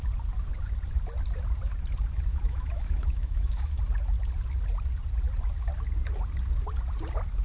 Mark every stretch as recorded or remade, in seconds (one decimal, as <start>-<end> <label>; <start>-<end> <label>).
0.0-2.3 recorded; 2.3-3.8 remade; 3.8-7.4 recorded